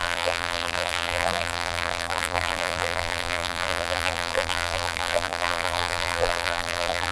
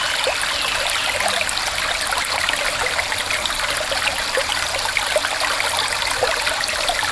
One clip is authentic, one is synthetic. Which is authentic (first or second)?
second